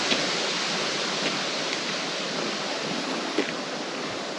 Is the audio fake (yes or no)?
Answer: no